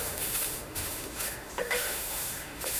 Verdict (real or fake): fake